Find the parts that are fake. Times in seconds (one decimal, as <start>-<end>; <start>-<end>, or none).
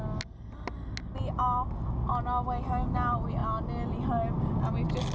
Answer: none